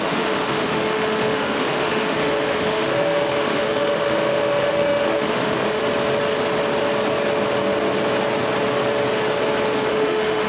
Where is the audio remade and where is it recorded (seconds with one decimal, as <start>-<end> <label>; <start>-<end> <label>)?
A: 0.0-5.8 remade; 5.8-9.9 recorded; 9.9-10.5 remade